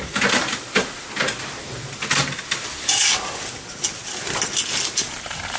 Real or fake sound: real